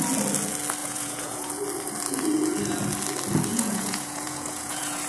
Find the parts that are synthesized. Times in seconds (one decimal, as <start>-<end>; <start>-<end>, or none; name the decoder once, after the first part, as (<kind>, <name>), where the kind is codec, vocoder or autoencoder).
0.8-1.5 (vocoder, Vocos); 3.5-5.1